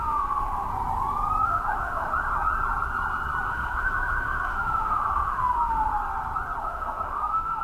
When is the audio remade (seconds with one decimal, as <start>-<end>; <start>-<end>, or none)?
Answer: 0.0-0.7; 1.4-2.1; 3.5-5.9; 6.6-7.6